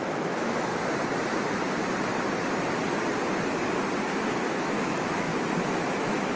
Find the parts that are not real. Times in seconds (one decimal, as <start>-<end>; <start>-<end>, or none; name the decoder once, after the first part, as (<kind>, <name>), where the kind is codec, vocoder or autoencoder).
0.0-0.7 (autoencoder, DAC-VAE); 4.0-5.3; 6.0-6.4